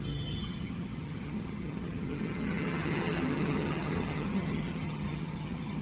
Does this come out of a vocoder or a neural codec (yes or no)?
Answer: yes